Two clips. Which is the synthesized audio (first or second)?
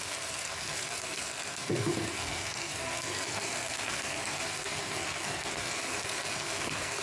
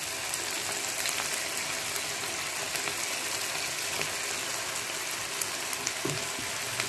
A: first